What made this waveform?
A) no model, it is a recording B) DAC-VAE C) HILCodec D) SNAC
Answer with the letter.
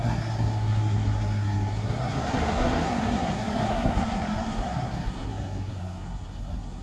D